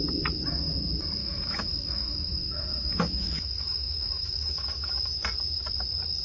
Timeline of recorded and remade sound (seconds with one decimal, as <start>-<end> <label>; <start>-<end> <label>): 0.0-1.2 recorded; 1.2-4.9 remade; 4.9-6.2 recorded

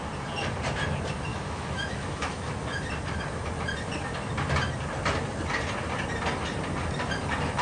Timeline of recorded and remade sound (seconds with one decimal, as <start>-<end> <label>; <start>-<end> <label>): 0.0-1.3 recorded; 1.3-2.5 remade; 2.5-7.6 recorded

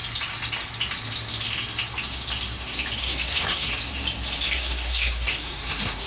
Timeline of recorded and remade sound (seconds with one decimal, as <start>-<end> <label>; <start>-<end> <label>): 0.0-3.0 recorded; 3.0-3.7 remade; 3.7-4.5 recorded; 4.5-6.1 remade